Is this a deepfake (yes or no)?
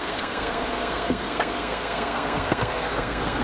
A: yes